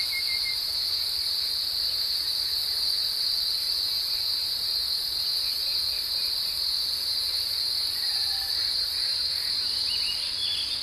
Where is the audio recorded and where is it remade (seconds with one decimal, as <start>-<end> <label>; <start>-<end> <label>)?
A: 0.0-9.1 recorded; 9.1-10.0 remade; 10.0-10.8 recorded